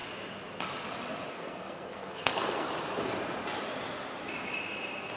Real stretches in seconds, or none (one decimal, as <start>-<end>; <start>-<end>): 0.0-1.3; 2.7-5.2